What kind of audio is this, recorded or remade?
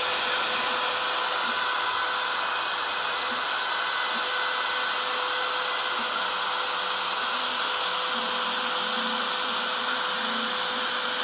recorded